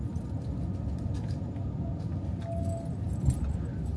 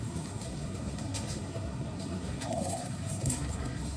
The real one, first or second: first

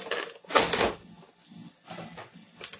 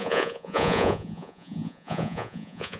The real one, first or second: first